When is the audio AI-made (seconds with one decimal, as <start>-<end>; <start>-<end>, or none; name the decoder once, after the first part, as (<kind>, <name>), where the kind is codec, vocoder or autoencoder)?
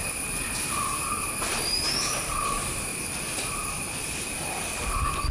0.0-1.0 (vocoder, BigVGAN v2); 1.5-2.5; 2.9-4.6